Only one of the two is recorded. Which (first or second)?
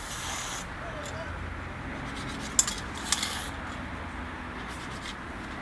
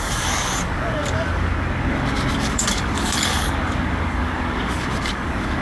first